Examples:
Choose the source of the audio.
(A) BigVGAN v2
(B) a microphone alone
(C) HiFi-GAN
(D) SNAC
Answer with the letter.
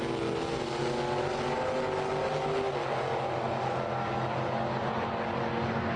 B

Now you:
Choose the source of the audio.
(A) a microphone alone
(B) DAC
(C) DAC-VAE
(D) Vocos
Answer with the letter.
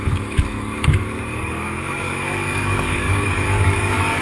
B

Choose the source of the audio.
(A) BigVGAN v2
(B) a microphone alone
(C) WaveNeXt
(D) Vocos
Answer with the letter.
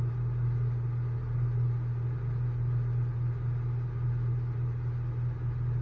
B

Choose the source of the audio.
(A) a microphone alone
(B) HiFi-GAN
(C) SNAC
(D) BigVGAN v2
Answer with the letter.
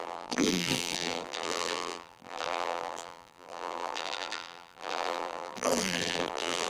D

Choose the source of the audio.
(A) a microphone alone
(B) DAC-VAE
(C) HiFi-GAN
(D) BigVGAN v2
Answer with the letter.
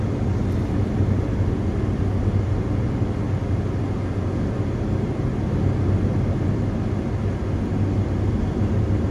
A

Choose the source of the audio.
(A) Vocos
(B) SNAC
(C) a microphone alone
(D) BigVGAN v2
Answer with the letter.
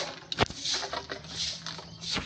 C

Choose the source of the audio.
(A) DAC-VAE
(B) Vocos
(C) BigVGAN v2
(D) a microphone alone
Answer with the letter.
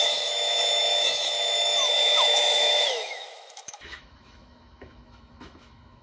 A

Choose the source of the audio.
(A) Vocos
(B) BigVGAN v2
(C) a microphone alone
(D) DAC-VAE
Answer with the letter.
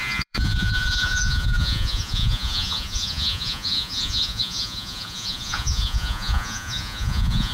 A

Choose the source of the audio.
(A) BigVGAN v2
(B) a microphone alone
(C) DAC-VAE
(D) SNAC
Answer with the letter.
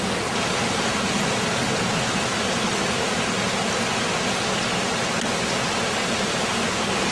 B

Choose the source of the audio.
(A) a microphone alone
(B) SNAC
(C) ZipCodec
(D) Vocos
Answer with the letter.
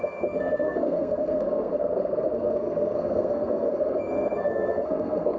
B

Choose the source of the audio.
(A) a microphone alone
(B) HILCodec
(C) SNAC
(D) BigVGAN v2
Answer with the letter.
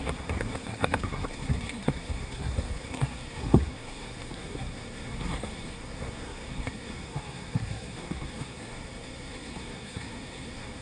C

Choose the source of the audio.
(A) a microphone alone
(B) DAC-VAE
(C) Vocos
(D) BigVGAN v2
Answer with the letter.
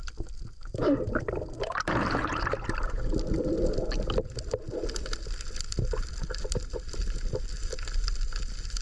A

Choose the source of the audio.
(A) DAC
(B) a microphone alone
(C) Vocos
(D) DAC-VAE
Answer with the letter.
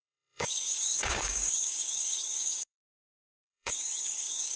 A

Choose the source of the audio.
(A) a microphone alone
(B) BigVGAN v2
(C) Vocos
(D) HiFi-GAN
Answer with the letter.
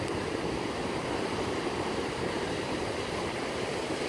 A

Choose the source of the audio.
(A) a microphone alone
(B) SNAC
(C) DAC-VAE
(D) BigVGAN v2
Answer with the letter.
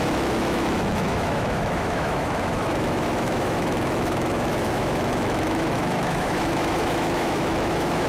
C